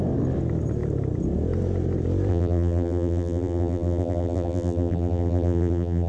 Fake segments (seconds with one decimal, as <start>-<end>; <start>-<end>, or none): 2.3-6.1